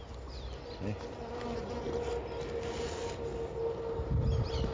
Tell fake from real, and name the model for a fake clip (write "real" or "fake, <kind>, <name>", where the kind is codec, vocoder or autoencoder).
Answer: real